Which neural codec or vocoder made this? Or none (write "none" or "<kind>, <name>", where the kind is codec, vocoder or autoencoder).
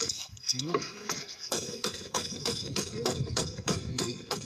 codec, SNAC